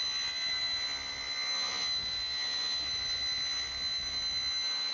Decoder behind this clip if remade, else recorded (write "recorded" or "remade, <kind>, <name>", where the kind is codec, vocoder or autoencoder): recorded